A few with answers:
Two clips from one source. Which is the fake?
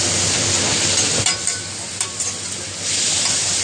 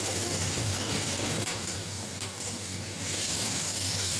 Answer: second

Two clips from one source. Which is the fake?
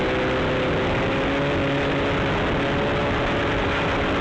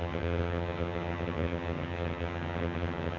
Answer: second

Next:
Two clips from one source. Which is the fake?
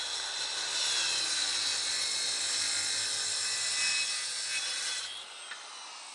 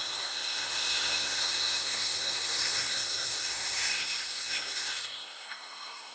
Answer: second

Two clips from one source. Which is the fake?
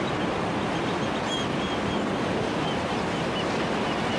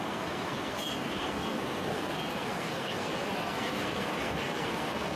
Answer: second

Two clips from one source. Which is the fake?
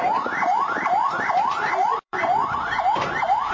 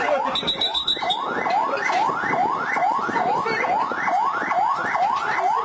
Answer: first